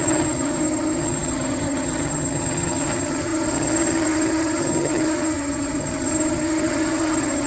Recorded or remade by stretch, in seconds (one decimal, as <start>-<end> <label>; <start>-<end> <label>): 0.0-7.5 remade